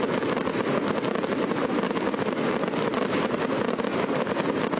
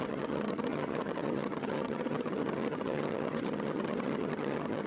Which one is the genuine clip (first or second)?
first